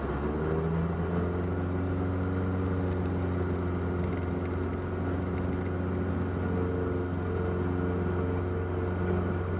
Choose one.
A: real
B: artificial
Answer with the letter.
A